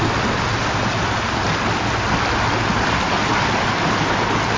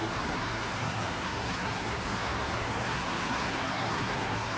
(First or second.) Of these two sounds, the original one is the first